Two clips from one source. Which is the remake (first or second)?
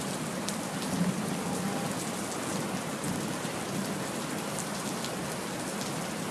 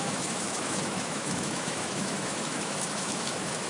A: second